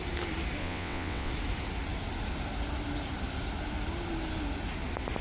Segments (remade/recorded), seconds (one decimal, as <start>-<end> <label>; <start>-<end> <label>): 0.0-0.6 recorded; 0.6-1.3 remade; 1.3-5.2 recorded